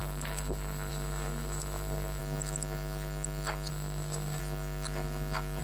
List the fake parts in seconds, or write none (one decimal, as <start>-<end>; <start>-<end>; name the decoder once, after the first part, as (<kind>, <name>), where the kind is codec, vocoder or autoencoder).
0.0-2.2 (codec, SNAC); 3.7-4.4